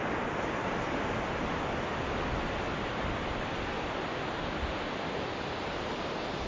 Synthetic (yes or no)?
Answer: no